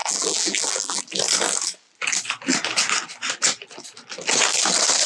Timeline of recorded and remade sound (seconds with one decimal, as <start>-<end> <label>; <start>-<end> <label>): 0.0-1.0 remade; 1.0-5.1 recorded

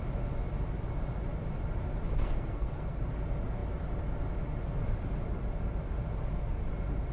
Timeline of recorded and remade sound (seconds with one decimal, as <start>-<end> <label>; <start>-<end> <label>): 0.0-2.2 recorded; 2.2-3.0 remade; 3.0-7.1 recorded

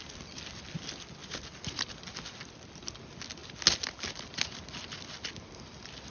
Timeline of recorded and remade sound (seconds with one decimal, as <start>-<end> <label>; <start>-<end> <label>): 0.0-6.1 recorded

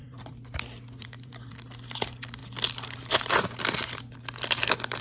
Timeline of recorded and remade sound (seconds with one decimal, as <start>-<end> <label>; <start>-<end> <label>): 0.0-1.5 remade; 1.5-5.0 recorded

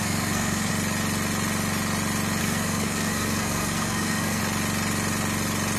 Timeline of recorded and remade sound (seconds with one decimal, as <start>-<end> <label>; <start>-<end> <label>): 0.0-0.7 remade; 0.7-2.4 recorded; 2.4-4.4 remade; 4.4-5.8 recorded

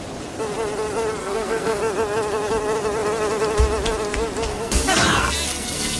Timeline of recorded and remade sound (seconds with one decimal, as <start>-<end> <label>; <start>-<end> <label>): 0.0-1.2 recorded; 1.2-1.8 remade; 1.8-4.5 recorded; 4.5-6.0 remade